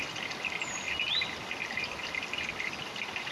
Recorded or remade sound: recorded